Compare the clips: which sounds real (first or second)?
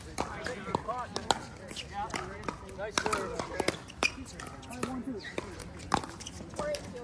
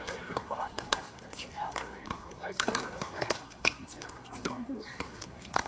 first